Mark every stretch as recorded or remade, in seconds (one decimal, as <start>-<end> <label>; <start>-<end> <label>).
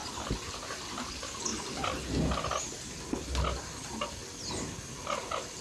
0.0-5.6 recorded